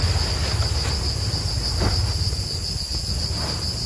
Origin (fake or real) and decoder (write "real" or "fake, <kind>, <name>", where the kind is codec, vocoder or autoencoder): real